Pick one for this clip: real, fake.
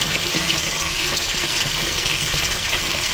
fake